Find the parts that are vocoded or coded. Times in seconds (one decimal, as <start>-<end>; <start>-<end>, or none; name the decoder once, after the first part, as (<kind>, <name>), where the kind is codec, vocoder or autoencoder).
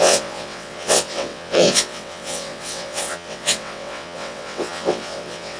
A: 0.0-5.6 (vocoder, WaveNeXt)